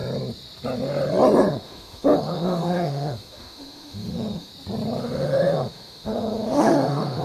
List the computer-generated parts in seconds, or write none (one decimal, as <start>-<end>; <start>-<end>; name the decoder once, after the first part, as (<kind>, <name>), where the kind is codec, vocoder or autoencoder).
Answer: 1.5-4.5 (autoencoder, DAC-VAE); 5.0-7.2